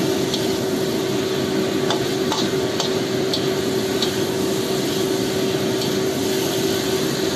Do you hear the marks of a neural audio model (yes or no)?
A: no